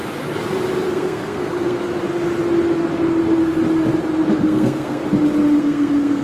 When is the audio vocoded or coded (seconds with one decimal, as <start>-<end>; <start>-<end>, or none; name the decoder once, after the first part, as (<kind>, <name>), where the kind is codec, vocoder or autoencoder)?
0.9-1.8 (codec, SNAC); 4.3-5.0; 5.6-6.2